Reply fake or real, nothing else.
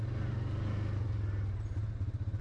real